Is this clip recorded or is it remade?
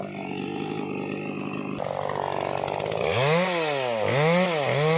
recorded